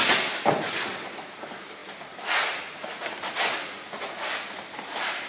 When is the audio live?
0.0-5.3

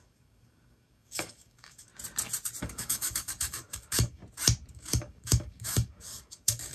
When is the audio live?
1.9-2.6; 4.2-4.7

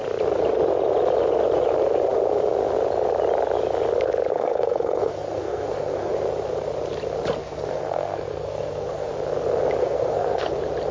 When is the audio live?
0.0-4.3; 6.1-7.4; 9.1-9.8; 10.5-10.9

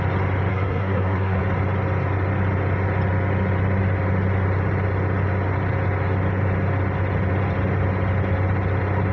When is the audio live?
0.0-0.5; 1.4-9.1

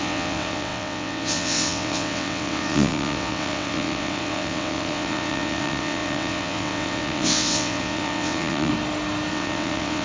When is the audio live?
8.7-9.3